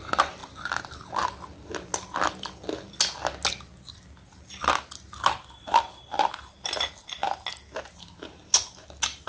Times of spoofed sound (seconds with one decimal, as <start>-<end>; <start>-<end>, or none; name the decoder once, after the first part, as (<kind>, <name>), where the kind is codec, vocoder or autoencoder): none

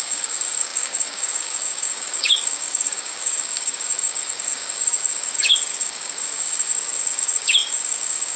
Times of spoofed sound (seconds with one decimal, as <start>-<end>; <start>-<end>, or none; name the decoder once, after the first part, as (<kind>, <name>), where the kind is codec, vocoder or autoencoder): 0.0-8.4 (codec, DAC)